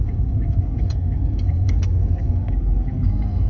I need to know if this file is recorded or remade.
remade